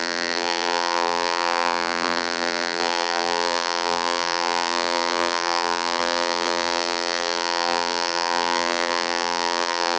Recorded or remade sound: remade